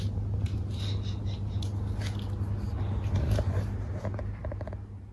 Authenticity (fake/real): real